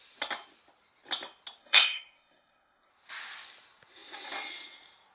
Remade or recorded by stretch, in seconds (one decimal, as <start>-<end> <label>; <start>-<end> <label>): 0.0-1.6 recorded; 1.6-2.9 remade; 2.9-5.1 recorded